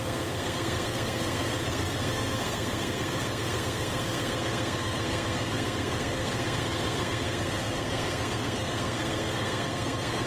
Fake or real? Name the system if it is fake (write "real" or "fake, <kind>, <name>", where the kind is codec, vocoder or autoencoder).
fake, codec, SNAC